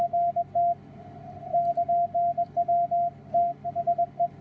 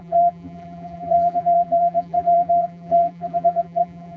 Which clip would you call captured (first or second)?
first